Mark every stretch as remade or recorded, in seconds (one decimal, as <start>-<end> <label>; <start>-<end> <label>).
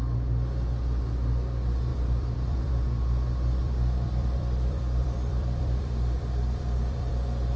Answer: 0.0-1.9 recorded; 1.9-2.7 remade; 2.7-3.6 recorded; 3.6-7.1 remade; 7.1-7.6 recorded